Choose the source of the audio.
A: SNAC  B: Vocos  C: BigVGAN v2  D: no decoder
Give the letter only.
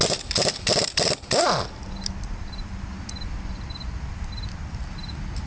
D